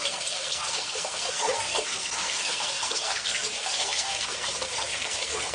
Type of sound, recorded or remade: remade